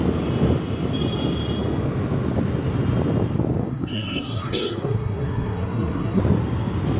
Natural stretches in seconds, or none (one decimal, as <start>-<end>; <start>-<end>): 0.0-3.6; 6.2-7.0